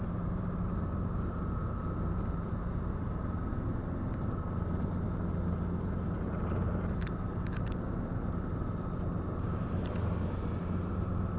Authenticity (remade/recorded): remade